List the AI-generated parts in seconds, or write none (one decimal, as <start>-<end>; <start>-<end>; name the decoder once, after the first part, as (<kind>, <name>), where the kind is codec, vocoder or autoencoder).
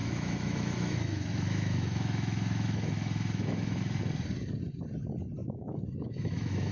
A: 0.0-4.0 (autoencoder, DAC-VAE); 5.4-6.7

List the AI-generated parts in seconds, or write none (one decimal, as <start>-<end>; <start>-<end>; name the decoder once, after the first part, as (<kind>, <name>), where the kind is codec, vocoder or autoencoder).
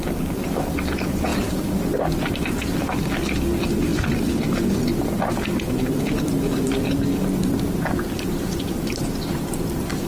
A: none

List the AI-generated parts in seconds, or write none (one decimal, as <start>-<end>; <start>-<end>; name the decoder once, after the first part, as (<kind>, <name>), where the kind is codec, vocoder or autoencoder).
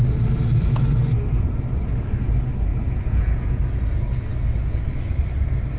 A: 2.7-3.6 (vocoder, Vocos)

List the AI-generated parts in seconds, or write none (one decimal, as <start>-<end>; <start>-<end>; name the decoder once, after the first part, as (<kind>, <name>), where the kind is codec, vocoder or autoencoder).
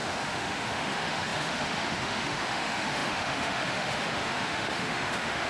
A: 0.0-5.5 (autoencoder, DAC-VAE)